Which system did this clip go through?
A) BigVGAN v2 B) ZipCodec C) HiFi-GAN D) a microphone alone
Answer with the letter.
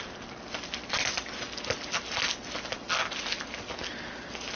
D